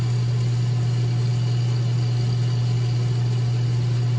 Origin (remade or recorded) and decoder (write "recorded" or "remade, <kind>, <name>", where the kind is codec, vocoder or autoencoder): recorded